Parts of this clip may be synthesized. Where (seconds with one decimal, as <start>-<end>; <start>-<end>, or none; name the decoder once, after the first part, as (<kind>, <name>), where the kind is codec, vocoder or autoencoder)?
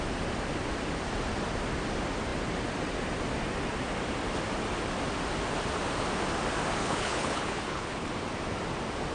6.8-8.1 (codec, HILCodec)